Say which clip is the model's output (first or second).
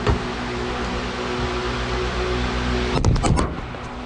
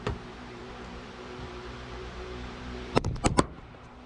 second